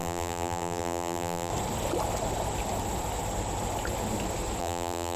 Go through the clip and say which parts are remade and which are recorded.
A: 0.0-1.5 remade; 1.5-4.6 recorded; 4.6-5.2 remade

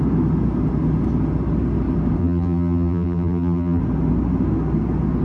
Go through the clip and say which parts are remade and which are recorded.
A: 0.0-2.2 recorded; 2.2-3.8 remade; 3.8-5.2 recorded

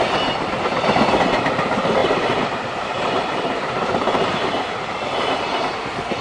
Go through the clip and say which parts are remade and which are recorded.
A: 0.0-2.0 recorded; 2.0-5.7 remade; 5.7-6.2 recorded

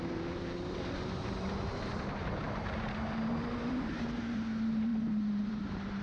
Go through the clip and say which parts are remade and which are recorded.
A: 0.0-6.0 remade